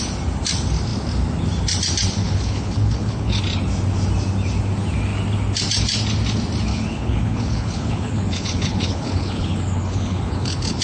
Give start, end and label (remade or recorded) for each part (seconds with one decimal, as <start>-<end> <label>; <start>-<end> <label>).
0.0-2.2 recorded; 2.2-3.4 remade; 3.4-6.7 recorded; 6.7-10.8 remade